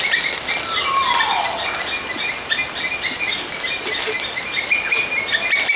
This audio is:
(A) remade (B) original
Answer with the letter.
B